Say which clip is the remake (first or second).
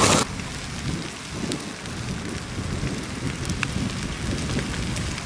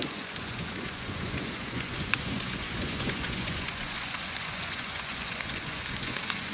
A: second